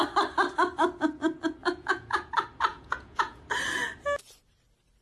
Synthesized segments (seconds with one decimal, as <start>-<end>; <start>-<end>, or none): 1.6-2.3; 2.7-3.4